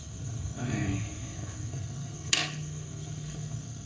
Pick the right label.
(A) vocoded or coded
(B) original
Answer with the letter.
A